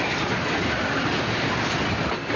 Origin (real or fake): real